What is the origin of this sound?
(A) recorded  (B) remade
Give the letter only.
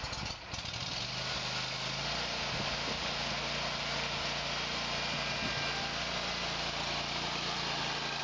A